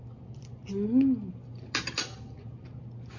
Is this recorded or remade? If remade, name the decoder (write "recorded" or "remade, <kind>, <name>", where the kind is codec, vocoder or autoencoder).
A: recorded